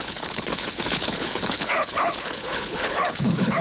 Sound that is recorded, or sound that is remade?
remade